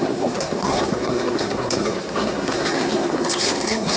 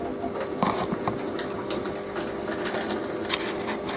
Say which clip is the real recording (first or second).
second